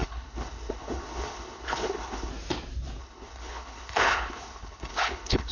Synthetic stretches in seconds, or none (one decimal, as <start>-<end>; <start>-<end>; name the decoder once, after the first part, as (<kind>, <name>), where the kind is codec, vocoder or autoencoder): 0.0-2.3 (codec, HILCodec); 3.0-5.5